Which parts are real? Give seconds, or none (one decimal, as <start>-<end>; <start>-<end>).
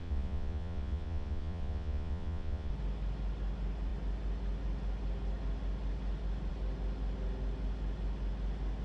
2.7-8.8